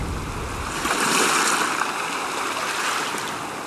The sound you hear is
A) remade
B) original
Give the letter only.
B